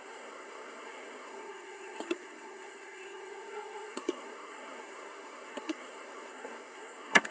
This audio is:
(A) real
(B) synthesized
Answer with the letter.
B